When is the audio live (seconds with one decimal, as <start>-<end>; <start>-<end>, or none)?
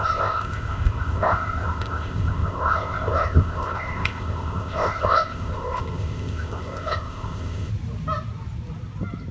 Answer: 7.7-9.3